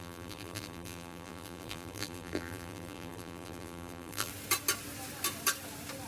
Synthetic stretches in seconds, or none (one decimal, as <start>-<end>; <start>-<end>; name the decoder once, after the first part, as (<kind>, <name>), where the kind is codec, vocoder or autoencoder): 0.0-4.3 (vocoder, BigVGAN v2)